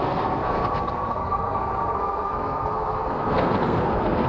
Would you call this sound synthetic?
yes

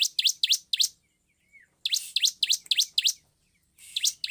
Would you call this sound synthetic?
no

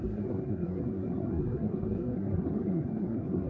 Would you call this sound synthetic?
yes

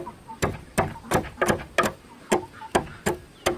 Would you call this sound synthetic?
no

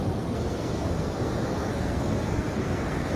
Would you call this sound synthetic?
yes